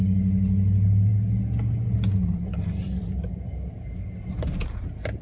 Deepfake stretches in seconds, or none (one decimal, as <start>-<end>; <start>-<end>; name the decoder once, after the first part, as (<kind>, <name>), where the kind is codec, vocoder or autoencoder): none